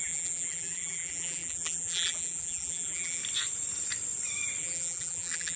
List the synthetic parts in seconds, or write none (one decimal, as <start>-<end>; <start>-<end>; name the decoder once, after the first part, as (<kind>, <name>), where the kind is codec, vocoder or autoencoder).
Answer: 0.0-3.2 (vocoder, BigVGAN v2); 4.6-5.6

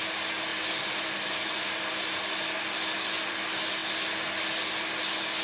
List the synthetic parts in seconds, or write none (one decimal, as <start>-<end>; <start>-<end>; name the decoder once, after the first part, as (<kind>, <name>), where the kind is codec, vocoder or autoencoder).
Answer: 0.5-1.6 (vocoder, BigVGAN v2)